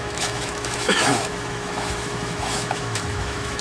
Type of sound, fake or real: fake